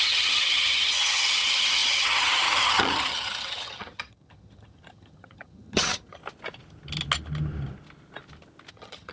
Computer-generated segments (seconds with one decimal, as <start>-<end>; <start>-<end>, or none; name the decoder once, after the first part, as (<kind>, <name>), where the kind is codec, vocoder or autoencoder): 0.0-6.2 (vocoder, HiFi-GAN); 8.7-9.1